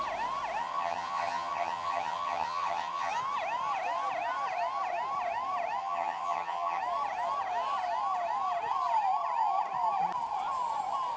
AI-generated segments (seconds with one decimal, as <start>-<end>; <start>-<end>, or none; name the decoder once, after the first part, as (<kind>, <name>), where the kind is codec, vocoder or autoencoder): 0.6-3.1 (vocoder, HiFi-GAN); 5.8-6.8